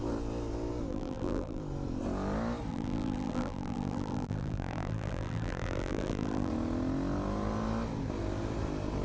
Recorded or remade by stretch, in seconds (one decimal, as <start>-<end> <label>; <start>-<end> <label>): 0.0-0.9 recorded; 0.9-1.6 remade; 1.6-2.7 recorded; 2.7-6.5 remade; 6.5-9.0 recorded